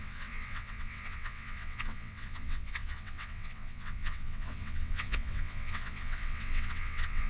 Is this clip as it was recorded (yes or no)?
no